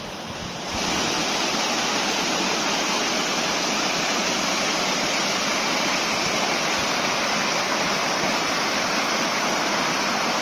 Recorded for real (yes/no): yes